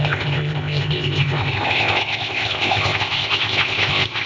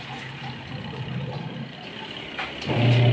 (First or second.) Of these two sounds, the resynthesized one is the first